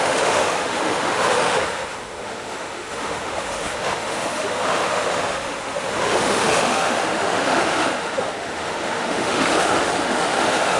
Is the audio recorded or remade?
remade